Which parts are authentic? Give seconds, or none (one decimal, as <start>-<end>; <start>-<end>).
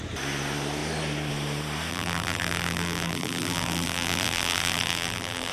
0.0-1.9